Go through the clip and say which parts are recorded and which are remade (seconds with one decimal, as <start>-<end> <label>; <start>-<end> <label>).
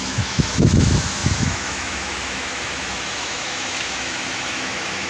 0.0-5.1 remade